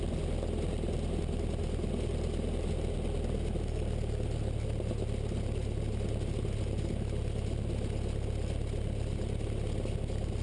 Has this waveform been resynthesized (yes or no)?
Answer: no